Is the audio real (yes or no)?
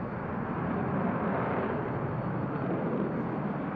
yes